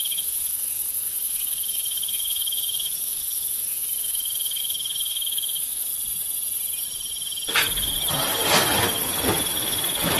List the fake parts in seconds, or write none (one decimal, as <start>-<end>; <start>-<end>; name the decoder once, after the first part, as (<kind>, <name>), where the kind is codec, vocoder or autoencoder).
0.0-5.9 (autoencoder, DAC-VAE); 9.4-10.2